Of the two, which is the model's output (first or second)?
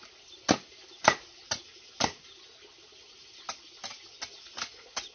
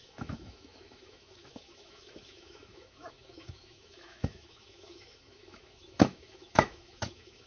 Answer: second